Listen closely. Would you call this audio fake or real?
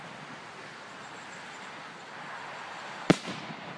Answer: real